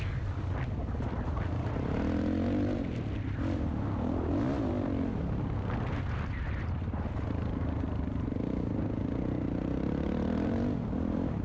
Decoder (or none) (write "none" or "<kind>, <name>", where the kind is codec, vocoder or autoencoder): none